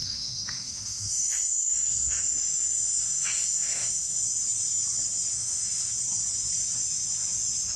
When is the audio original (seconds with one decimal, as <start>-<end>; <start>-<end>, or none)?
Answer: 4.2-5.3; 5.9-7.8